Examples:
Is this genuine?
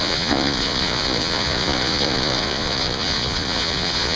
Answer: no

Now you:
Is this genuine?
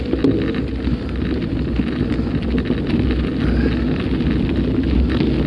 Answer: yes